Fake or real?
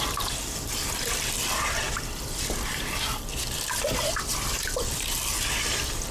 fake